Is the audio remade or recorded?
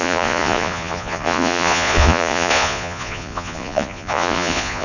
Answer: remade